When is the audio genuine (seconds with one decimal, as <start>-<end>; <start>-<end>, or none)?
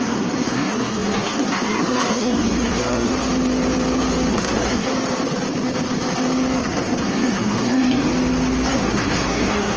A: 3.1-4.3; 4.9-6.6; 8.1-8.7